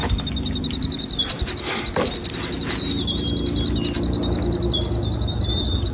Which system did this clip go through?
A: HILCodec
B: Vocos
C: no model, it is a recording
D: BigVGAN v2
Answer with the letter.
C